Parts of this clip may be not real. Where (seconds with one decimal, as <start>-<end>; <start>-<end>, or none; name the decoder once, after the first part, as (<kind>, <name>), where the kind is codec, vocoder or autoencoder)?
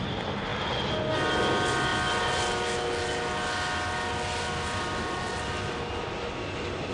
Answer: none